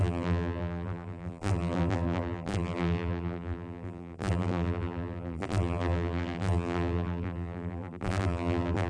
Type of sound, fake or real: fake